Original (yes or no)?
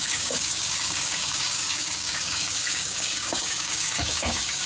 no